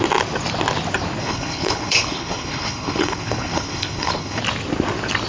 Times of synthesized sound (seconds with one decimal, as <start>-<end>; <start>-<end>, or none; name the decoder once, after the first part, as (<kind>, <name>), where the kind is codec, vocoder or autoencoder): 1.2-4.4 (codec, HILCodec)